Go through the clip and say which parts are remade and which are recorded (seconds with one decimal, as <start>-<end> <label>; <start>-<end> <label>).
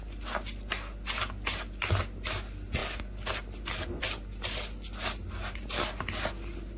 0.0-6.8 recorded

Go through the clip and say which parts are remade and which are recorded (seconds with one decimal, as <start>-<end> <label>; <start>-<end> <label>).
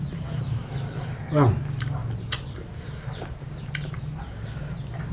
0.0-5.1 recorded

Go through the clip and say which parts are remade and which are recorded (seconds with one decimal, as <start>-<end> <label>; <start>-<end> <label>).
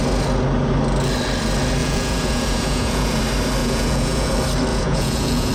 0.0-1.8 recorded; 1.8-3.2 remade; 3.2-3.6 recorded; 3.6-4.3 remade; 4.3-4.7 recorded; 4.7-5.5 remade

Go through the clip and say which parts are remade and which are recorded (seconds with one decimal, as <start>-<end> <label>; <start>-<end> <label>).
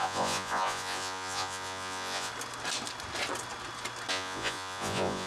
0.0-2.3 remade; 2.3-4.1 recorded; 4.1-5.3 remade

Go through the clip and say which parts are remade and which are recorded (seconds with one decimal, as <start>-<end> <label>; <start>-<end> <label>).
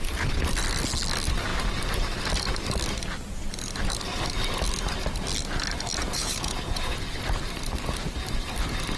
0.0-6.0 recorded; 6.0-7.0 remade; 7.0-9.0 recorded